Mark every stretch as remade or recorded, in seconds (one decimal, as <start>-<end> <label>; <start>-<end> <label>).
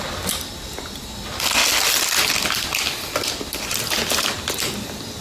0.0-5.2 recorded